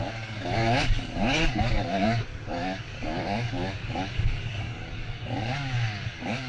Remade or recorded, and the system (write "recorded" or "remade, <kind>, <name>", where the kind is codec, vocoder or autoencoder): remade, codec, DAC